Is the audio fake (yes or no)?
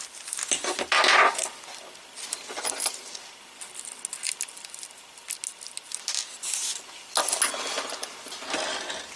no